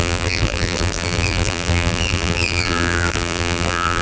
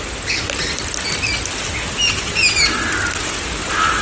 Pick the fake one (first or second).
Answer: first